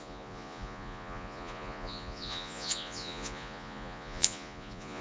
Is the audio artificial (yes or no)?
yes